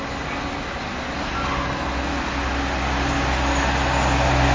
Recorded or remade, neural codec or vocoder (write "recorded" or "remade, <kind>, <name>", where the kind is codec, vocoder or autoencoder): recorded